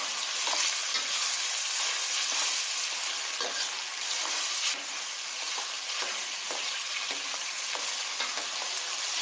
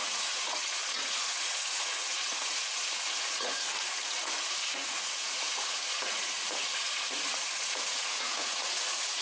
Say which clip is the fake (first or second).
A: second